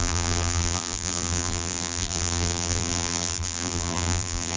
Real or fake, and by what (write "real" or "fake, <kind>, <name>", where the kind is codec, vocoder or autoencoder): fake, vocoder, BigVGAN v2